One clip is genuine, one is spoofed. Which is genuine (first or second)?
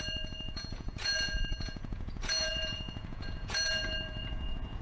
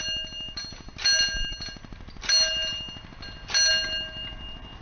second